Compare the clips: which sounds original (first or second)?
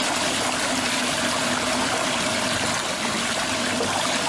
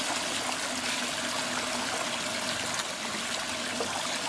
second